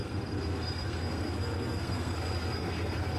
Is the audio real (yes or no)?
no